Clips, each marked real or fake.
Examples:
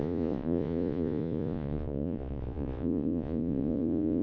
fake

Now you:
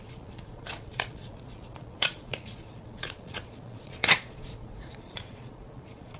fake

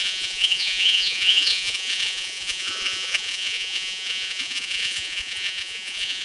fake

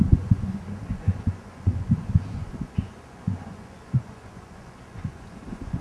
fake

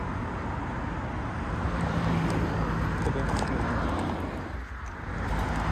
real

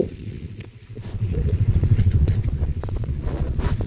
fake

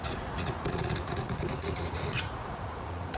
fake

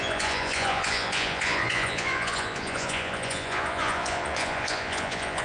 fake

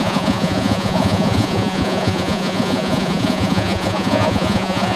fake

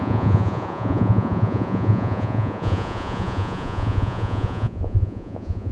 fake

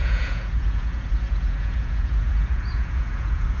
fake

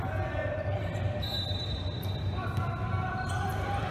real